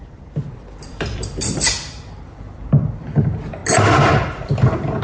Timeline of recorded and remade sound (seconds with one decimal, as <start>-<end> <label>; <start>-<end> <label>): 0.0-3.6 remade; 3.6-4.3 recorded; 4.3-5.0 remade